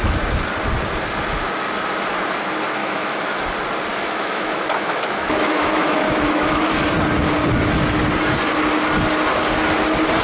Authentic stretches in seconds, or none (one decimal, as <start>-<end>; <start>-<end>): 0.0-2.8; 3.4-3.9; 6.7-10.2